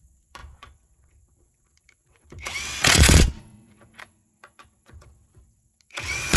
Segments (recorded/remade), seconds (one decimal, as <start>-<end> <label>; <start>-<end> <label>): 0.0-6.4 remade